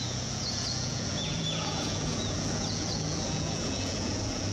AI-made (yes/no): yes